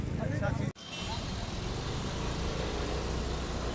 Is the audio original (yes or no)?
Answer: yes